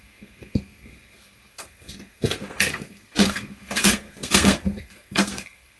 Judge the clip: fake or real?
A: fake